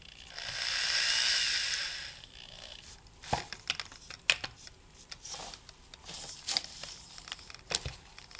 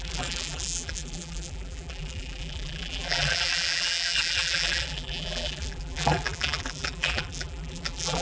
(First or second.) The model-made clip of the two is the second